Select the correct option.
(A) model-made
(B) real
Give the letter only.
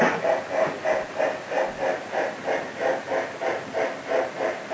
B